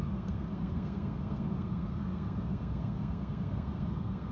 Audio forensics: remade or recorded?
remade